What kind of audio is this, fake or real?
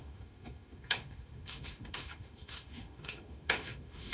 fake